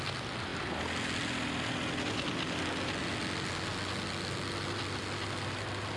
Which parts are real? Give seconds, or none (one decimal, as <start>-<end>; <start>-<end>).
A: 0.0-6.0